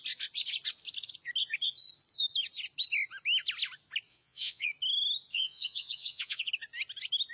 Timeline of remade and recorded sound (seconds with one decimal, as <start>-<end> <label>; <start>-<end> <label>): 0.0-4.1 recorded; 4.1-4.7 remade; 4.7-5.3 recorded; 5.3-6.5 remade; 6.5-7.3 recorded